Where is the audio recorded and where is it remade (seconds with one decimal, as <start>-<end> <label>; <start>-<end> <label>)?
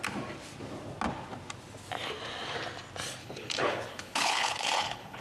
0.0-3.2 recorded; 3.2-5.2 remade